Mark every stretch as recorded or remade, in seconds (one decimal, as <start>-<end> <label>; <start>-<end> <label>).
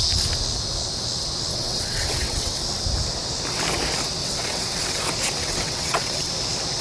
0.0-1.5 recorded; 1.5-2.6 remade; 2.6-4.2 recorded; 4.2-5.0 remade; 5.0-5.4 recorded; 5.4-6.3 remade; 6.3-6.8 recorded